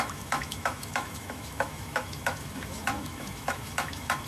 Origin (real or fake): fake